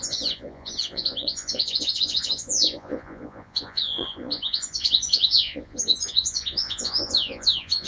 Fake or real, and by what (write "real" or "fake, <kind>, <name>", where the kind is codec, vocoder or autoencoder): fake, vocoder, Vocos